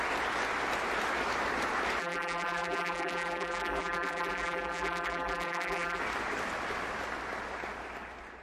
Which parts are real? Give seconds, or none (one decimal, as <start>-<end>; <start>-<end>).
0.0-2.0; 6.0-8.4